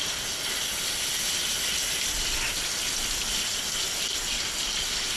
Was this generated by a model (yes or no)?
no